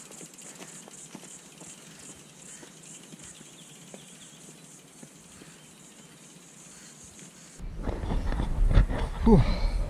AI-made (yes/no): no